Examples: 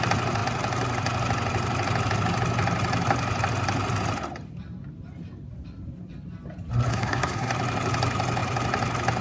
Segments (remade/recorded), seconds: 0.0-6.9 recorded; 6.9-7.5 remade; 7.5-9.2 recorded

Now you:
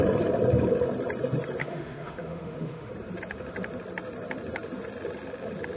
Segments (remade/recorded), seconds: 0.0-1.6 recorded; 1.6-2.9 remade; 2.9-5.8 recorded

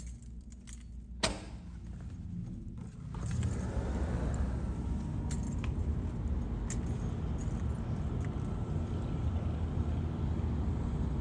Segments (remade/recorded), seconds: 0.0-11.2 recorded

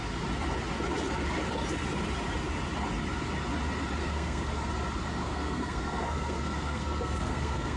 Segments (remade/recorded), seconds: 0.0-4.0 recorded; 4.0-4.7 remade; 4.7-5.2 recorded; 5.2-7.8 remade

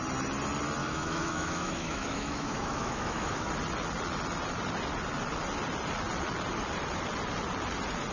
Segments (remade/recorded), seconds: 0.0-0.8 recorded; 0.8-3.5 remade; 3.5-8.1 recorded

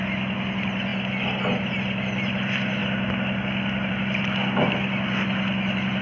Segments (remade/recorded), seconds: 0.0-6.0 recorded

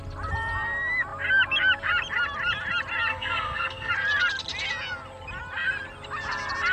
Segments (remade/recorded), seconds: 0.0-3.1 recorded; 3.1-3.9 remade; 3.9-6.7 recorded